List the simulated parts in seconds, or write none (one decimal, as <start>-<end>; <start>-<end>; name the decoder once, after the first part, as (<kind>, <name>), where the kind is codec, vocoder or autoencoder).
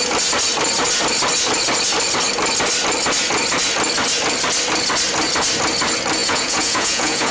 6.2-7.3 (vocoder, Vocos)